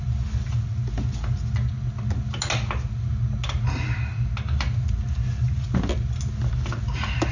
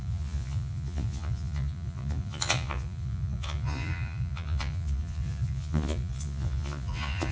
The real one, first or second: first